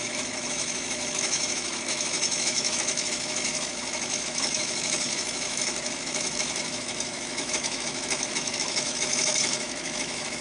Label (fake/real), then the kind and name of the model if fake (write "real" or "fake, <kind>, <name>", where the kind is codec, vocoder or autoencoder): fake, autoencoder, DAC-VAE